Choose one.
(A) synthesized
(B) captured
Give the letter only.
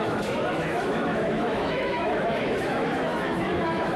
A